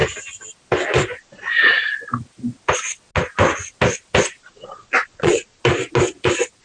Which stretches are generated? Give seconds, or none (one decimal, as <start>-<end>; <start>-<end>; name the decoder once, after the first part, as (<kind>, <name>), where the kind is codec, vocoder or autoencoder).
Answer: 1.2-1.9 (vocoder, Vocos); 4.4-5.6